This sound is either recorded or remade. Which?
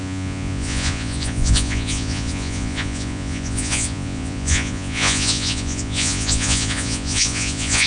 remade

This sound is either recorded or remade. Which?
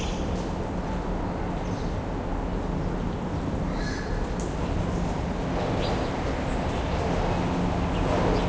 recorded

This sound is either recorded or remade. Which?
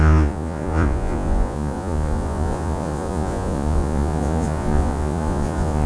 remade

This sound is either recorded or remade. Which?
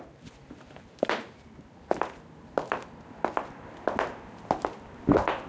recorded